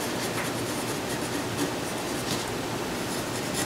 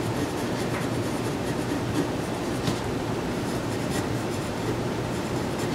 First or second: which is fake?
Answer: second